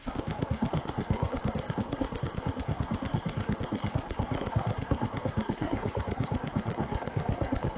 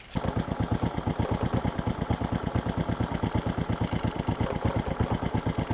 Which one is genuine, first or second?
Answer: second